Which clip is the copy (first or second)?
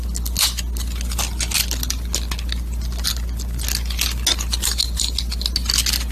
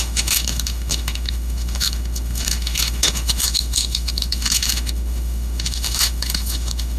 second